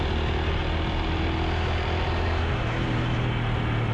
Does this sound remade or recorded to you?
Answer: recorded